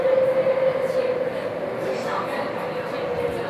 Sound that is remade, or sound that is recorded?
recorded